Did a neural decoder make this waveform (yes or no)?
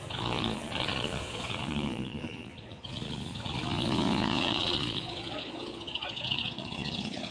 yes